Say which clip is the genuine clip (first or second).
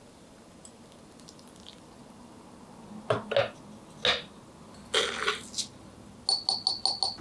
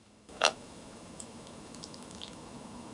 first